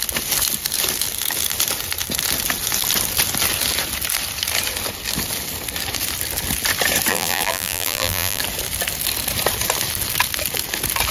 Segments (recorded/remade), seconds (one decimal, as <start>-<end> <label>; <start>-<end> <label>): 0.0-7.1 recorded; 7.1-8.4 remade; 8.4-11.1 recorded